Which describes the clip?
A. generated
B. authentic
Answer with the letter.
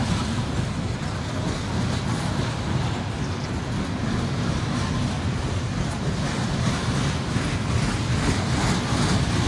B